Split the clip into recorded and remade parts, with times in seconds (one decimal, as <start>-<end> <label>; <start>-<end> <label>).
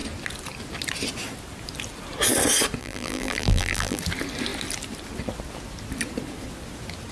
0.0-2.8 recorded; 2.8-4.0 remade; 4.0-7.1 recorded